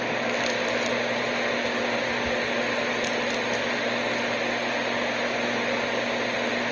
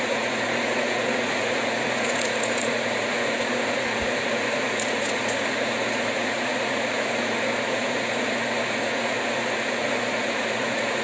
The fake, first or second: second